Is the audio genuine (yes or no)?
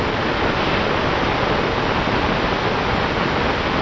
yes